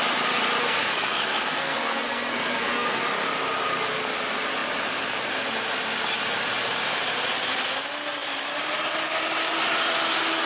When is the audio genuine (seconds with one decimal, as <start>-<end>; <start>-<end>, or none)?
0.0-0.6; 3.0-10.5